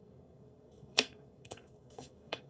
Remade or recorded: remade